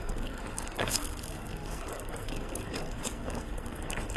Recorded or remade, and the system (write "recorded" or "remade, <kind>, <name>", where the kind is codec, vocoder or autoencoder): remade, codec, SNAC